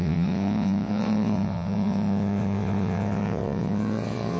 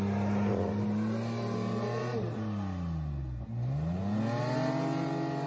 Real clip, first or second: second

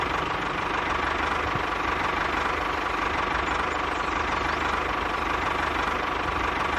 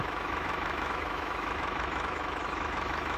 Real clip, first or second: first